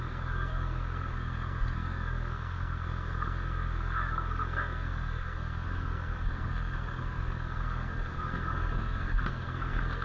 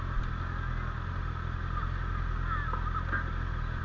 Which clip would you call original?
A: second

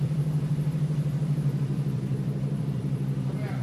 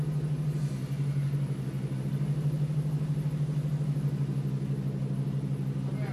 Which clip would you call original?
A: second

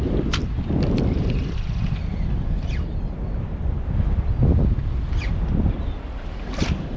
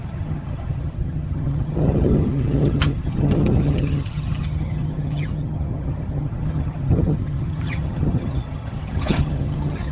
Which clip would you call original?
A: first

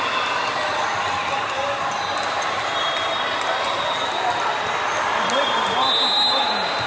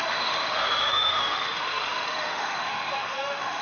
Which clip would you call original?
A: first